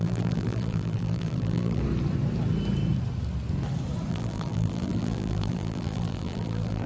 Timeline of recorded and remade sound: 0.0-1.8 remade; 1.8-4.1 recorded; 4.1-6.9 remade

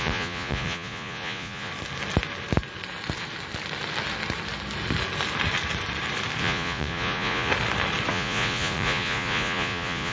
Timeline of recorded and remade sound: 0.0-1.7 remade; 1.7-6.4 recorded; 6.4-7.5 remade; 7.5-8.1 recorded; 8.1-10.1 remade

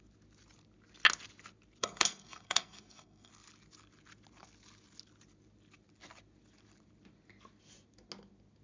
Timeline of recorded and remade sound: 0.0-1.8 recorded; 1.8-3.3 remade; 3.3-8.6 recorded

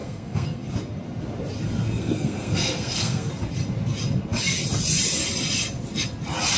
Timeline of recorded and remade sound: 0.0-0.7 remade; 0.7-2.0 recorded; 2.0-3.3 remade; 3.3-6.6 recorded

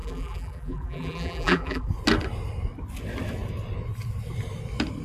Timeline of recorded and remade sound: 0.0-1.9 remade; 1.9-5.0 recorded

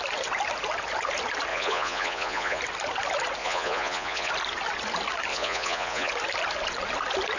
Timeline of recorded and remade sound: 0.0-1.5 recorded; 1.5-2.6 remade; 2.6-3.4 recorded; 3.4-4.3 remade; 4.3-5.3 recorded; 5.3-6.1 remade; 6.1-7.4 recorded

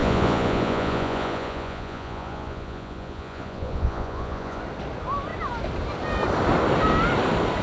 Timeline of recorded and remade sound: 0.0-4.6 remade; 4.6-7.6 recorded